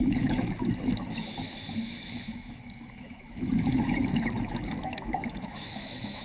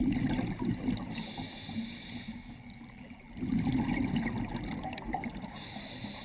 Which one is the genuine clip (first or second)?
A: second